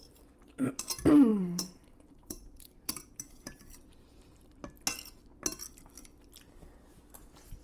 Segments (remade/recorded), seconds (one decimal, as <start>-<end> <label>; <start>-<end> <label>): 0.0-1.3 recorded; 1.3-4.6 remade; 4.6-7.6 recorded